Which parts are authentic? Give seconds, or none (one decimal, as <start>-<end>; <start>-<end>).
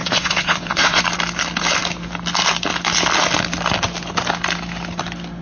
1.0-5.4